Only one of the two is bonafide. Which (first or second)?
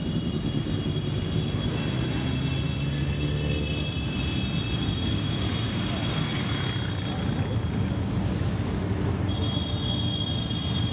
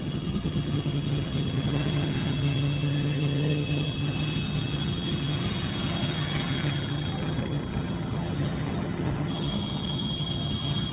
first